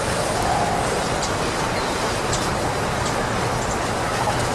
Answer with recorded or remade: recorded